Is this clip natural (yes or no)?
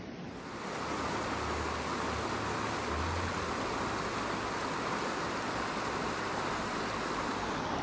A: yes